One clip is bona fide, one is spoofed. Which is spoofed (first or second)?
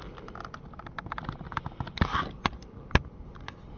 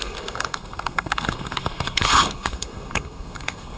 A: second